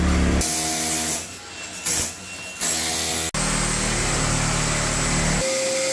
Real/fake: real